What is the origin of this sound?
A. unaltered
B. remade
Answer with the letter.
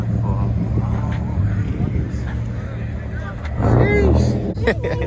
A